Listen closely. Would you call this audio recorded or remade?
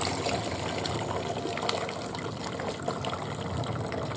recorded